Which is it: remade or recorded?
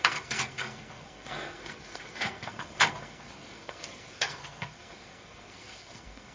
remade